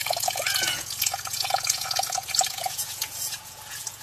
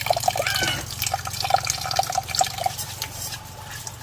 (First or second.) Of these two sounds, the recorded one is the second